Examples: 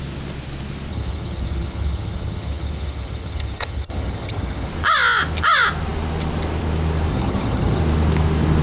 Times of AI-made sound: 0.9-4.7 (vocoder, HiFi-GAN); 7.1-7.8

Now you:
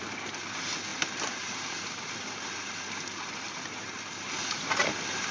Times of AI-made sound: none

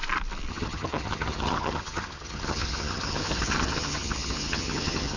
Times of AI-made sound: 0.5-5.2 (vocoder, HiFi-GAN)

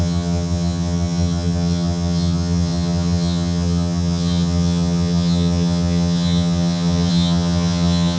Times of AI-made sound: 0.0-8.2 (vocoder, HiFi-GAN)